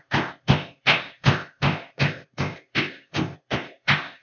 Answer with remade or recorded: remade